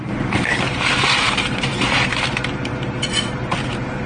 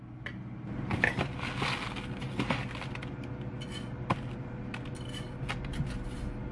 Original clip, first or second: second